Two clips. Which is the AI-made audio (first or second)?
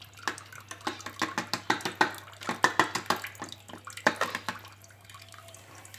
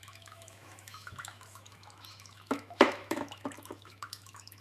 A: second